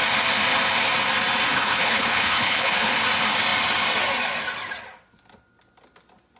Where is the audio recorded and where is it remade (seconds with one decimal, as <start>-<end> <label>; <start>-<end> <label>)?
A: 0.0-1.5 recorded; 1.5-2.9 remade; 2.9-6.4 recorded